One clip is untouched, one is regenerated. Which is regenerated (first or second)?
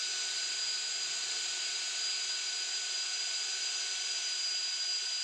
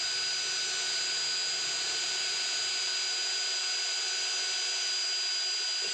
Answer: first